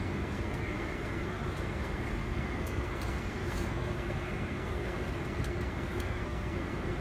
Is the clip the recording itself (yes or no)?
no